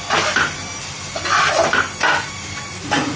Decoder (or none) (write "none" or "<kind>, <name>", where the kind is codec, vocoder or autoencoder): none